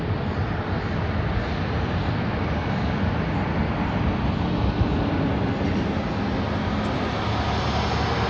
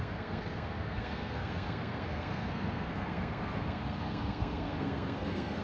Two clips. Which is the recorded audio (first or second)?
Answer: first